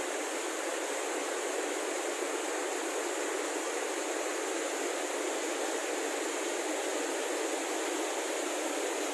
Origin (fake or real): real